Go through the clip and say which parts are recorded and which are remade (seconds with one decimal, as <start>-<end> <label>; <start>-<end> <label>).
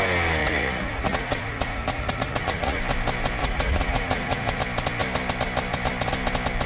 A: 0.0-0.4 recorded; 0.4-2.8 remade; 2.8-3.4 recorded; 3.4-4.6 remade; 4.6-6.7 recorded